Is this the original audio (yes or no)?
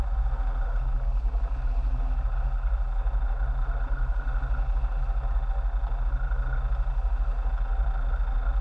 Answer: yes